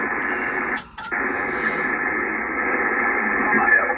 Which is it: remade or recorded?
recorded